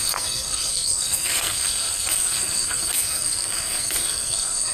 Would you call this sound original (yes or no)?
no